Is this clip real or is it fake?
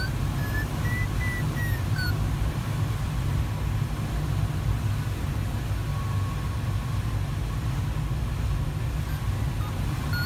real